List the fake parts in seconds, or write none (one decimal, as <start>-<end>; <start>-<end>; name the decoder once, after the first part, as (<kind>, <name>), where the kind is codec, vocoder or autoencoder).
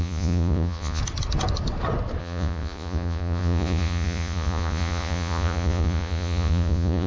0.0-1.0 (vocoder, Vocos); 2.2-7.1